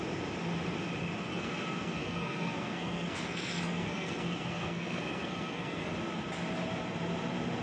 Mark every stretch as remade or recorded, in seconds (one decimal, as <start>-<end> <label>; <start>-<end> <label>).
0.0-1.3 recorded; 1.3-5.9 remade; 5.9-7.6 recorded